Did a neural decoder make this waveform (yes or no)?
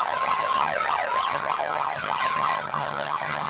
yes